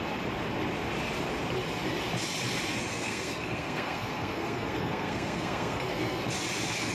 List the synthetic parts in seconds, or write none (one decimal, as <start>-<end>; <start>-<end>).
2.9-6.2